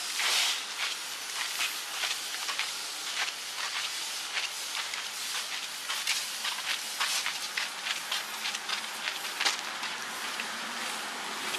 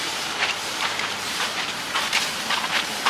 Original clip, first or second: first